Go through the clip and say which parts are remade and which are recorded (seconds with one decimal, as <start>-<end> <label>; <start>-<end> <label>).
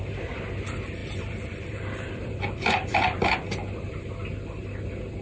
0.0-1.0 recorded; 1.0-4.1 remade; 4.1-5.2 recorded